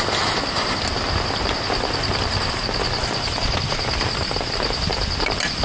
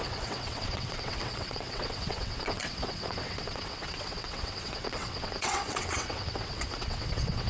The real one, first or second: first